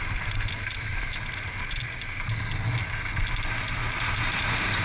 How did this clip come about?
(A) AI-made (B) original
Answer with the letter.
B